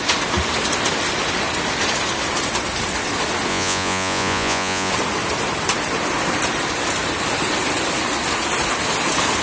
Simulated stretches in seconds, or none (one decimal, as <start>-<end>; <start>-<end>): 3.5-4.9